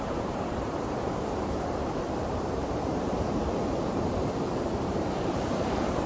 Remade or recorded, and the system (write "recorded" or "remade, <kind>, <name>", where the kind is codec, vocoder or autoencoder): remade, vocoder, BigVGAN v2